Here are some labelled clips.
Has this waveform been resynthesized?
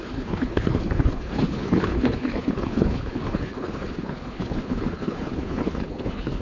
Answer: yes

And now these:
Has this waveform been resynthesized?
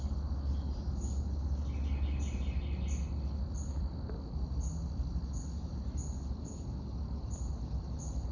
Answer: no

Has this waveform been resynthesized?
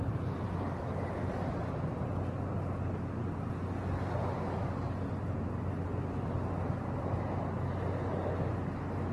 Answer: no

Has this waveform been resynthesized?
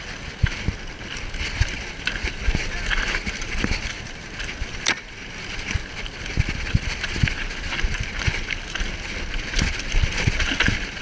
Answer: no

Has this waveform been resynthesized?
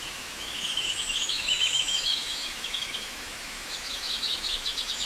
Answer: yes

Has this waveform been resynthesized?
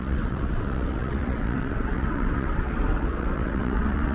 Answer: yes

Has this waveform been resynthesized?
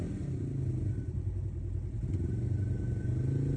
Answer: no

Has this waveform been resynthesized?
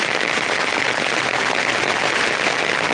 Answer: no